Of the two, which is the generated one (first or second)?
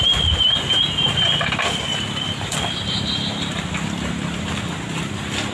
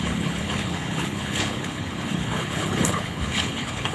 second